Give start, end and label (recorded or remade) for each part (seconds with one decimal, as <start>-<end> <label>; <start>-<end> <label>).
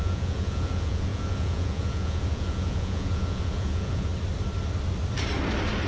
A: 0.0-4.1 remade; 4.1-5.9 recorded